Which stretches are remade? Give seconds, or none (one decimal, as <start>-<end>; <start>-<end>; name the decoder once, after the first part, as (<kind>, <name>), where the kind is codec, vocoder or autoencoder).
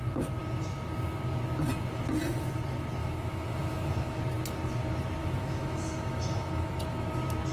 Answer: 3.0-4.2 (autoencoder, DAC-VAE); 5.2-7.1